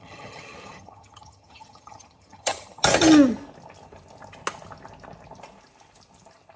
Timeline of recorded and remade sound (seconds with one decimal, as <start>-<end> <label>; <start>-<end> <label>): 0.0-2.8 remade; 2.8-6.6 recorded